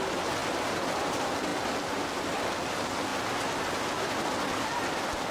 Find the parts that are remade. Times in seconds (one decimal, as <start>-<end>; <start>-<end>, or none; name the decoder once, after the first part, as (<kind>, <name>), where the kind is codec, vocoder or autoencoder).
none